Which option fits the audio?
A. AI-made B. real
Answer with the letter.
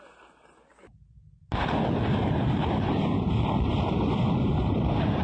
B